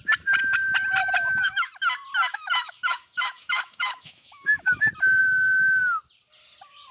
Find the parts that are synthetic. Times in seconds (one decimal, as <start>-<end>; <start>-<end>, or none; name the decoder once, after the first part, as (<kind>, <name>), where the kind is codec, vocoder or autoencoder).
1.0-1.7 (autoencoder, DAC-VAE); 2.3-4.8; 5.2-5.8